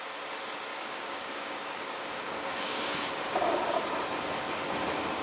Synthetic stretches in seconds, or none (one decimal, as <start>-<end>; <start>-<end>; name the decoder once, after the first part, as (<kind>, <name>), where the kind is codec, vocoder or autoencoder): 0.7-3.8 (codec, DAC)